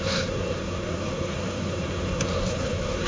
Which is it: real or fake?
fake